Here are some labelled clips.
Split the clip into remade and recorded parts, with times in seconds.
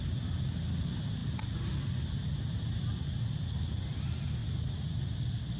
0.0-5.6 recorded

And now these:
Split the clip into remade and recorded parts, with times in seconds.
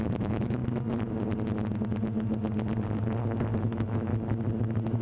0.0-0.6 remade; 0.6-3.6 recorded; 3.6-4.1 remade; 4.1-5.0 recorded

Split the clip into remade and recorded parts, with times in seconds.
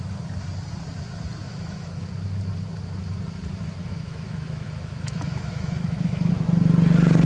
0.0-1.4 recorded; 1.4-2.1 remade; 2.1-3.8 recorded; 3.8-6.3 remade; 6.3-7.2 recorded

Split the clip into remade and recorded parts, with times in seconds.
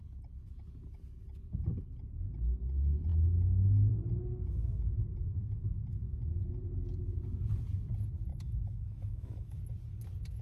0.0-4.3 recorded; 4.3-6.5 remade; 6.5-8.3 recorded; 8.3-9.6 remade; 9.6-10.4 recorded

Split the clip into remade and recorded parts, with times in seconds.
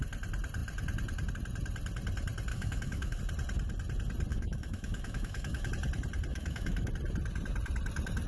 0.0-2.5 recorded; 2.5-3.2 remade; 3.2-4.3 recorded; 4.3-5.7 remade; 5.7-6.3 recorded; 6.3-6.9 remade; 6.9-8.3 recorded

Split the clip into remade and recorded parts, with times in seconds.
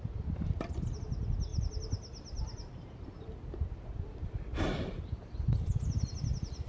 0.0-6.7 recorded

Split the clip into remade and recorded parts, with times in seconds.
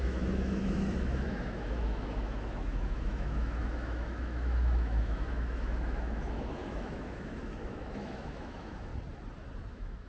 0.0-8.9 remade; 8.9-9.7 recorded; 9.7-10.1 remade